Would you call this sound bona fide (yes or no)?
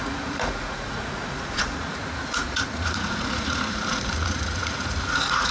no